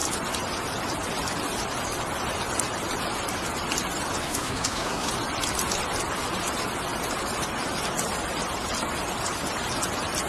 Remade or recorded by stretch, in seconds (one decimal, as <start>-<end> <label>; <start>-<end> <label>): 0.0-4.2 recorded; 4.2-5.1 remade; 5.1-10.3 recorded